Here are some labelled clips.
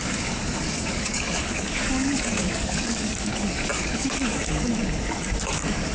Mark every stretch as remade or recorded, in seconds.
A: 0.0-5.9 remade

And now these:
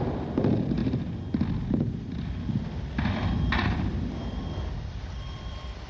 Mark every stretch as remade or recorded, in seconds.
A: 0.0-0.8 remade; 0.8-2.6 recorded; 2.6-5.9 remade

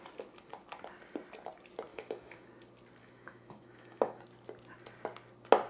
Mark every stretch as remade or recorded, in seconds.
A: 0.0-1.9 recorded; 1.9-2.5 remade; 2.5-3.0 recorded; 3.0-4.2 remade; 4.2-5.7 recorded

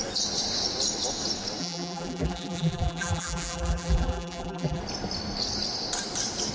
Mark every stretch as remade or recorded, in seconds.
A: 0.0-1.6 recorded; 1.6-4.8 remade; 4.8-6.5 recorded

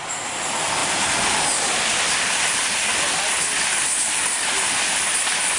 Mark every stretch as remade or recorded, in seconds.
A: 0.0-5.6 recorded

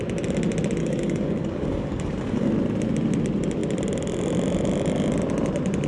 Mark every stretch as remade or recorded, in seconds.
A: 0.0-0.8 recorded; 0.8-2.5 remade; 2.5-5.9 recorded

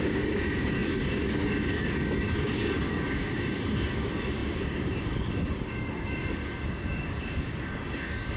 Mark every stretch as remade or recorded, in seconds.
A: 0.0-8.4 remade

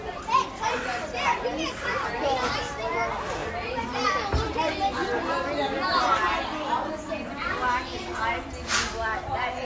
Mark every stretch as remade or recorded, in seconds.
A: 0.0-9.6 recorded